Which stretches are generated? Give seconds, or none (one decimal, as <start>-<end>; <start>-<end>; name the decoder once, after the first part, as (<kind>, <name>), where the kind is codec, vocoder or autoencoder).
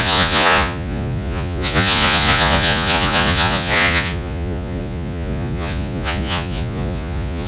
0.0-7.5 (vocoder, Vocos)